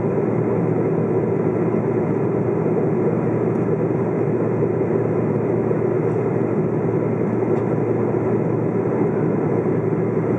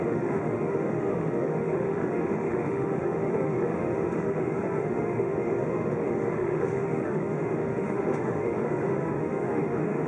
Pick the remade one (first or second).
second